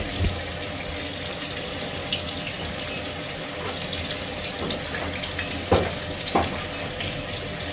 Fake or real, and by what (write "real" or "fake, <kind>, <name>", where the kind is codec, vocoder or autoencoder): real